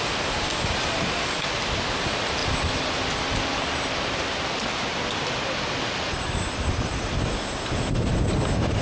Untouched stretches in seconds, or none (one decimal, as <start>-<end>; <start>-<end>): 0.0-8.8